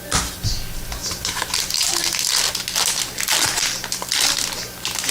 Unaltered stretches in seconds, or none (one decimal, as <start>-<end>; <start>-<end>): 0.0-1.0; 1.9-5.1